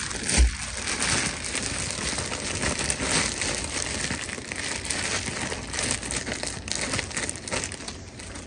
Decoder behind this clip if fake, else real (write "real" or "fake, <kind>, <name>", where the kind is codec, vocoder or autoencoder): real